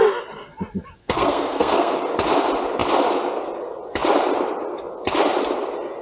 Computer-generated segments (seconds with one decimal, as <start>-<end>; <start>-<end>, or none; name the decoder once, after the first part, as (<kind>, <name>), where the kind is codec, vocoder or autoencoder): 1.0-1.9 (codec, SNAC)